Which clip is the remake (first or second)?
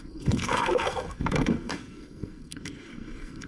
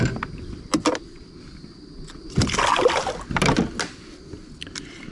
first